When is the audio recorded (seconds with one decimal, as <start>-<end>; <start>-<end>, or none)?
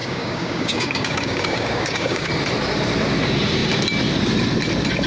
2.3-5.1